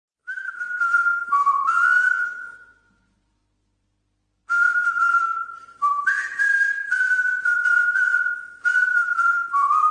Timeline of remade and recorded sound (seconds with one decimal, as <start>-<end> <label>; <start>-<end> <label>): 0.0-2.2 recorded; 2.2-3.4 remade; 3.4-6.1 recorded; 6.1-8.9 remade; 8.9-9.9 recorded